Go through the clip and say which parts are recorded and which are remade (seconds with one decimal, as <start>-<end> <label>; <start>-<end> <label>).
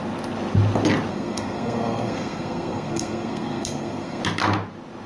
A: 0.0-1.1 recorded; 1.1-4.2 remade; 4.2-5.1 recorded